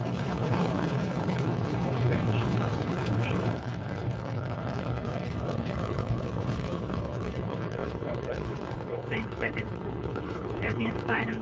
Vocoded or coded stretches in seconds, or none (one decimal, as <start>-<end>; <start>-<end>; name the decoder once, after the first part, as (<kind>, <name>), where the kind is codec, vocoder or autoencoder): 0.0-11.4 (codec, HILCodec)